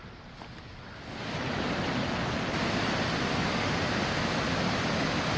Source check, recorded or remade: recorded